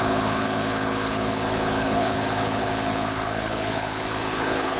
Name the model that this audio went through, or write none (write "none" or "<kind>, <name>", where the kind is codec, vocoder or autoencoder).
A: codec, HILCodec